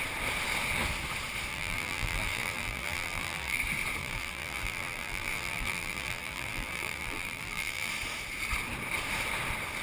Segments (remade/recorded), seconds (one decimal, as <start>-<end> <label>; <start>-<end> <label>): 0.0-1.5 recorded; 1.5-3.6 remade; 3.6-4.0 recorded; 4.0-7.9 remade; 7.9-9.8 recorded